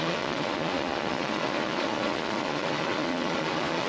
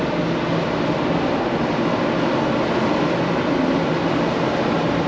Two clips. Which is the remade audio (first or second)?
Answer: first